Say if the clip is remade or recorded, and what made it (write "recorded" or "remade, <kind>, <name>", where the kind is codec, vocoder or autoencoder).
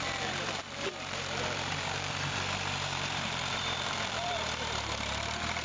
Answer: remade, vocoder, BigVGAN v2